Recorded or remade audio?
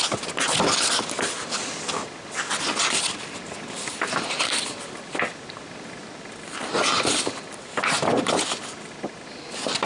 recorded